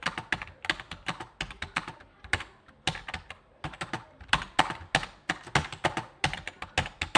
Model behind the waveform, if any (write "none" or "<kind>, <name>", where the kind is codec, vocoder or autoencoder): none